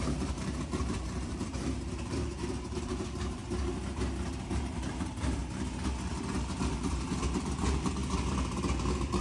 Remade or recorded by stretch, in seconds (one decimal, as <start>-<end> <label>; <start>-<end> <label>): 0.0-3.4 remade; 3.4-4.5 recorded; 4.5-5.4 remade; 5.4-6.1 recorded; 6.1-8.0 remade; 8.0-9.2 recorded